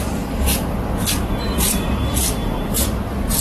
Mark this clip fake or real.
real